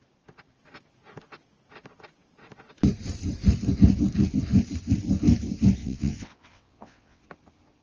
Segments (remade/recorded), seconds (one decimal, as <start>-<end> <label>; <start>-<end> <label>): 0.0-5.8 recorded; 5.8-7.2 remade; 7.2-7.8 recorded